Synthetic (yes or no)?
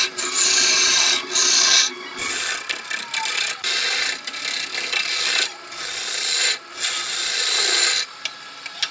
no